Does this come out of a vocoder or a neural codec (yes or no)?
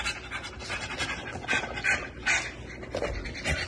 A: no